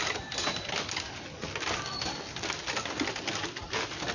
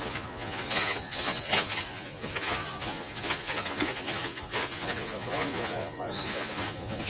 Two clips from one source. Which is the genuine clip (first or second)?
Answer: first